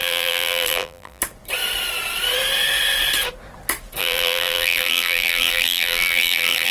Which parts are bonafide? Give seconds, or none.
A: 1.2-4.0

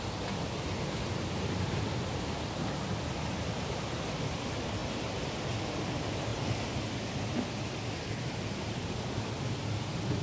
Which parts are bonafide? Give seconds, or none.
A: 0.0-6.3; 9.1-10.2

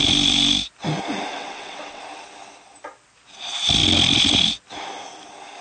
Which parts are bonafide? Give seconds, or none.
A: 0.0-1.3; 2.0-5.6

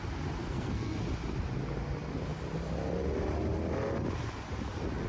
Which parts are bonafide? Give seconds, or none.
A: 0.0-0.4; 1.0-5.1

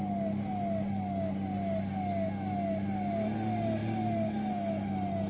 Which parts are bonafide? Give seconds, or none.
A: 0.0-5.3

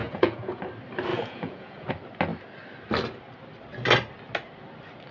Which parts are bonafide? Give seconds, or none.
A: 0.6-1.1; 1.9-5.1

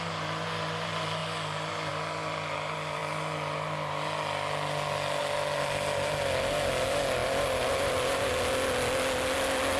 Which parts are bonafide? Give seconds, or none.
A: 0.0-9.8

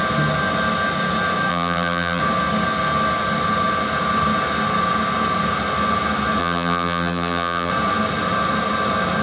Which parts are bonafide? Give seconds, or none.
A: 0.0-1.5; 2.2-6.4; 7.7-9.2